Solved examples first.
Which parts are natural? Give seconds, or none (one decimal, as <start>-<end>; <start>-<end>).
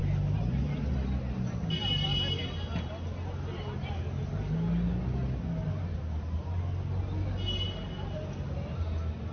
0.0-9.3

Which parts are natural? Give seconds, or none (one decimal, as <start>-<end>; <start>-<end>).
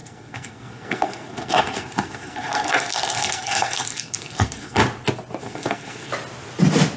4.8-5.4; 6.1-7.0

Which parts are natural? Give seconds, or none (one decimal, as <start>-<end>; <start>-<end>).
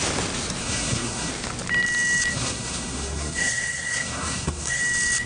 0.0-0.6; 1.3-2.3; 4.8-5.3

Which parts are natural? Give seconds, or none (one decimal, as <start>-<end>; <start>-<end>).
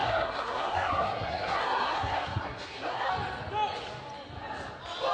3.1-5.1